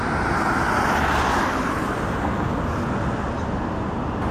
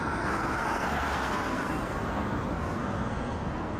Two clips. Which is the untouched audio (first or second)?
first